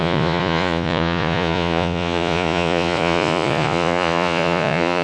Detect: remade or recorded remade